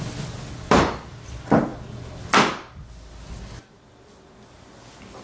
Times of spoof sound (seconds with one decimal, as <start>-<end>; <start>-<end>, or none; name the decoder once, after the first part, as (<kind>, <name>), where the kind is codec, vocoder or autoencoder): none

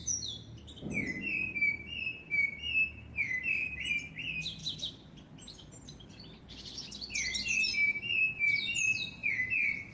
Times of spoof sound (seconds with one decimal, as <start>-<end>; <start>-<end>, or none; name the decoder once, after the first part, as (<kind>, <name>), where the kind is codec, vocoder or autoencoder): 3.1-4.1 (vocoder, BigVGAN v2)